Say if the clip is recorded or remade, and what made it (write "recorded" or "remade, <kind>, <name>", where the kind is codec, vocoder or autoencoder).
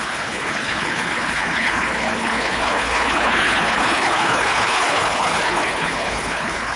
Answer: remade, codec, HILCodec